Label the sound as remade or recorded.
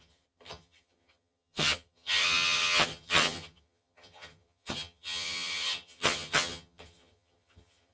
remade